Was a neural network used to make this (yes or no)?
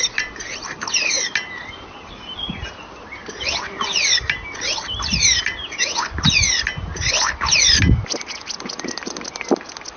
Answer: no